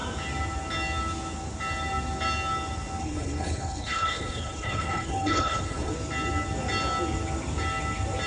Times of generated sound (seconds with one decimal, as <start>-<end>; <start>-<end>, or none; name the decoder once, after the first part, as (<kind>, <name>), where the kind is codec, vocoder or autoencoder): 3.0-5.9 (codec, HILCodec)